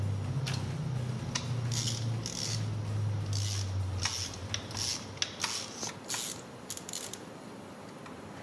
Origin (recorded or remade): recorded